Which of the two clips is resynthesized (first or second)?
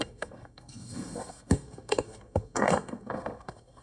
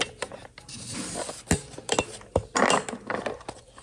first